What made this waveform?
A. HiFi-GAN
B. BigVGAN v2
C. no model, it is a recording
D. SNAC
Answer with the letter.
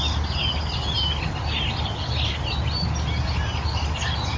C